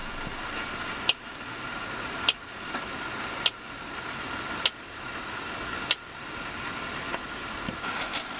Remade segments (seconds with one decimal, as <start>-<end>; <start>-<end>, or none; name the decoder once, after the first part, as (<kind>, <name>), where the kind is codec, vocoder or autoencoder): none